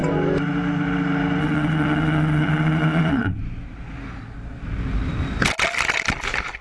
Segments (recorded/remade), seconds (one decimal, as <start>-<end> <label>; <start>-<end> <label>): 0.0-1.4 recorded; 1.4-3.4 remade; 3.4-6.6 recorded